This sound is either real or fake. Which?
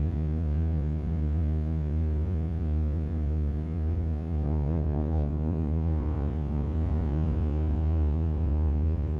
fake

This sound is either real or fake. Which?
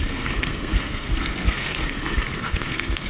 fake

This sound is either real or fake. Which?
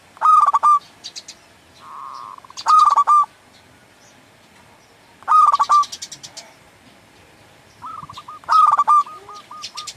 real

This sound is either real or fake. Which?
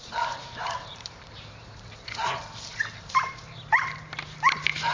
fake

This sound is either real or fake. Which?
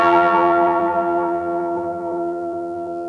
fake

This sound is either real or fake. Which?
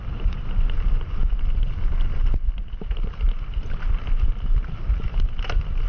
real